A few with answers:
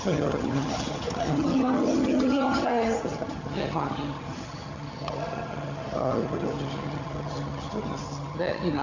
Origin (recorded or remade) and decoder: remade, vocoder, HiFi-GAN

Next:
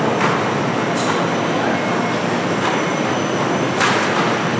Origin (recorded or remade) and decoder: recorded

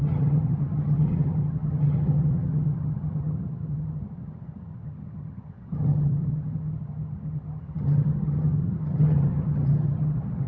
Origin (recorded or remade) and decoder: remade, vocoder, HiFi-GAN